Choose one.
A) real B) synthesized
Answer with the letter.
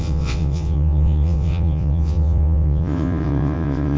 B